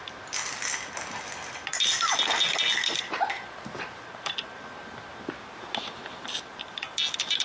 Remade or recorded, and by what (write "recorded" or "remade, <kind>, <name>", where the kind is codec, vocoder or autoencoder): recorded